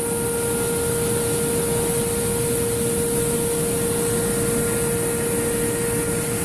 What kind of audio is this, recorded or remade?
recorded